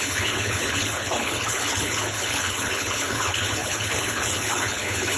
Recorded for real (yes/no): no